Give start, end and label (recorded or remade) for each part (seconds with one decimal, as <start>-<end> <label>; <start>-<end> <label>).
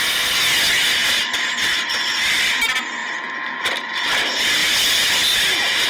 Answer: 0.0-5.9 recorded